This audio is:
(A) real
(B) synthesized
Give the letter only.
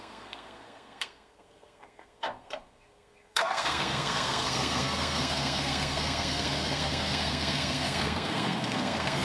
B